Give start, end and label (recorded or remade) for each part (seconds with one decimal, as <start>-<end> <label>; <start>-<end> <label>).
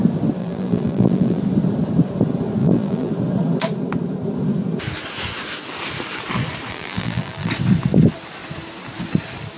0.0-0.4 recorded; 0.4-1.4 remade; 1.4-2.6 recorded; 2.6-3.1 remade; 3.1-6.7 recorded; 6.7-7.5 remade; 7.5-9.6 recorded